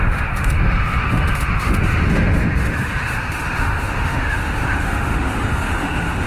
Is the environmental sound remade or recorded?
remade